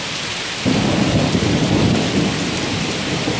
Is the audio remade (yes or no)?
no